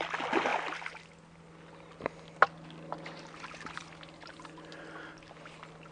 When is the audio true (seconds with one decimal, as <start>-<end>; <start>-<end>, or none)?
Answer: 0.0-5.9